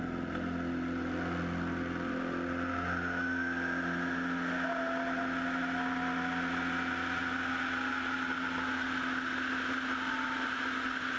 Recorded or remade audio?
recorded